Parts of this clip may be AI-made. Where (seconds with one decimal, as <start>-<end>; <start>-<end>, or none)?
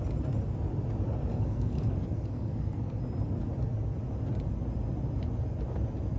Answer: 1.3-3.0